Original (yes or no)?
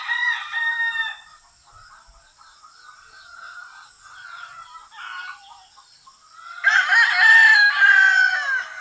yes